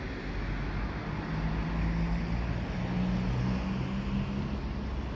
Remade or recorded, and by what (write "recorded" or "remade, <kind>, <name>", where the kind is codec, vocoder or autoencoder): recorded